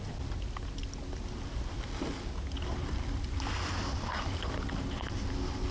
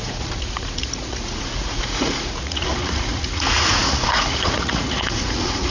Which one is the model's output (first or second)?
second